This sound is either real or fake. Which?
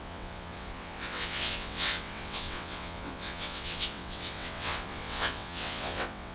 fake